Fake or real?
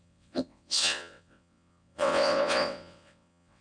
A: fake